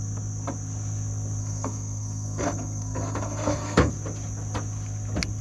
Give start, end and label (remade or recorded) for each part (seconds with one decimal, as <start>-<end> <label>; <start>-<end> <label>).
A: 0.0-1.4 recorded; 1.4-3.9 remade; 3.9-5.4 recorded